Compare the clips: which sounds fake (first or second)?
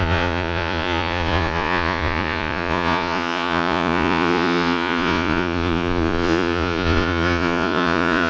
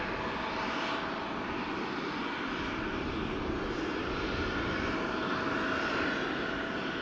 first